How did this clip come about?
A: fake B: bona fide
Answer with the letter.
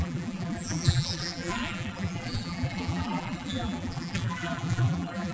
A